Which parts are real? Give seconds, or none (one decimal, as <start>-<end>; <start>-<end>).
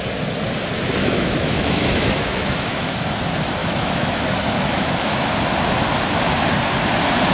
0.0-1.0; 3.0-3.6; 5.2-7.3